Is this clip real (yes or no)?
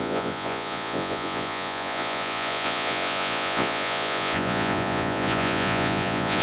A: no